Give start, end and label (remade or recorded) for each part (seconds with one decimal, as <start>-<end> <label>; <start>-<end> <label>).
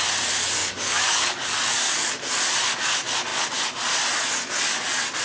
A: 0.0-0.6 recorded; 0.6-2.1 remade; 2.1-5.2 recorded